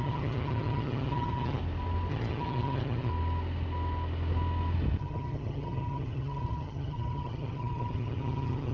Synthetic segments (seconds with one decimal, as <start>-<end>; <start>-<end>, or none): 0.0-1.6; 2.1-3.1; 5.0-8.7